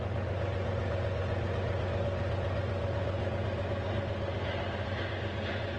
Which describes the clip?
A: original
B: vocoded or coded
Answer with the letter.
A